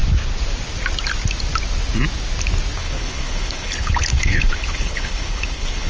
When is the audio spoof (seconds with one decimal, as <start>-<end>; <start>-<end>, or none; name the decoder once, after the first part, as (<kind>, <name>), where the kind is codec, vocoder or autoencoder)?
2.8-5.9 (codec, HILCodec)